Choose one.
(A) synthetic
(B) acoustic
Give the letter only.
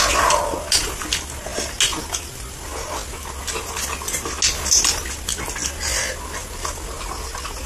B